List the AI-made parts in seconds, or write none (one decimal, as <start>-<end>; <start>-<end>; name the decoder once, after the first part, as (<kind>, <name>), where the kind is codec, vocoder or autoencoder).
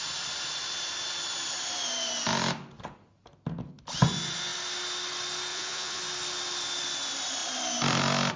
5.5-6.0 (vocoder, Vocos)